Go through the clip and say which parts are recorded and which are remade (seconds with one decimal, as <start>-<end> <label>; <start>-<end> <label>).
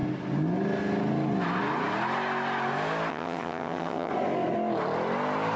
0.0-3.1 recorded; 3.1-4.1 remade; 4.1-5.6 recorded